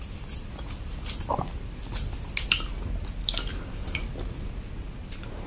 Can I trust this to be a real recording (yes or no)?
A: yes